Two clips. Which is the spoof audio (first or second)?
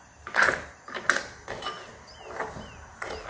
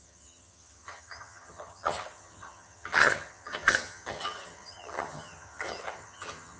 second